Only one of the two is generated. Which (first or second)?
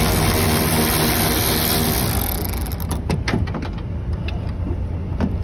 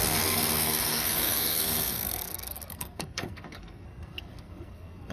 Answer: second